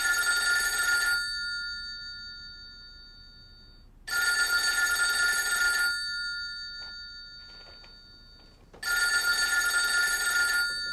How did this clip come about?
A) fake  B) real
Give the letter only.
B